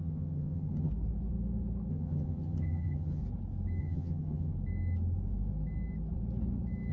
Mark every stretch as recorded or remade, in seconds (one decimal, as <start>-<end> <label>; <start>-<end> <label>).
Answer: 0.0-0.9 remade; 0.9-1.9 recorded; 1.9-3.2 remade; 3.2-3.8 recorded; 3.8-4.5 remade; 4.5-6.9 recorded